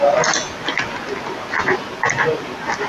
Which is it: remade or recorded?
recorded